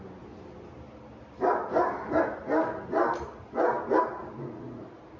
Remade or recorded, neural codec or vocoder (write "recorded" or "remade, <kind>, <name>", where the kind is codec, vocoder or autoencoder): recorded